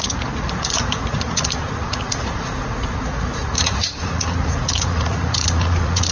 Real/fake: fake